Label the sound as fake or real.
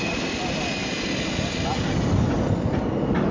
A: real